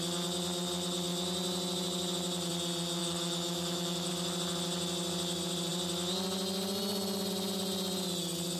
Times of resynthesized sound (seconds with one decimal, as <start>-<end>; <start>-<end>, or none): 3.0-4.1